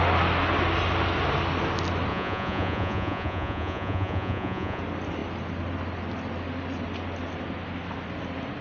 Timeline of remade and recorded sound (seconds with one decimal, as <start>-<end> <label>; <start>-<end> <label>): 0.0-2.1 recorded; 2.1-4.8 remade; 4.8-8.6 recorded